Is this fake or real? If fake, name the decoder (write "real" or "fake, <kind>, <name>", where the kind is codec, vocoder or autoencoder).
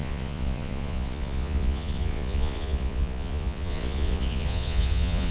fake, vocoder, Vocos